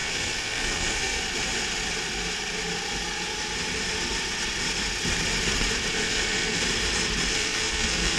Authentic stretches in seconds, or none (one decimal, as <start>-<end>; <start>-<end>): 1.2-5.9; 6.6-7.3